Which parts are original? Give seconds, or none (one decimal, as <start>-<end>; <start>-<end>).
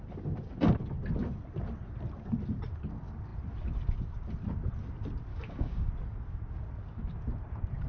0.0-5.3; 5.9-7.9